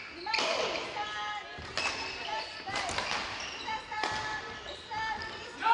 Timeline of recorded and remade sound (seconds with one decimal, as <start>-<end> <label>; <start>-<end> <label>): 0.0-5.7 recorded